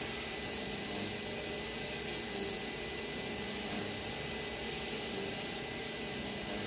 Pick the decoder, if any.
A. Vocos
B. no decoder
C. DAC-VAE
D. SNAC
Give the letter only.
B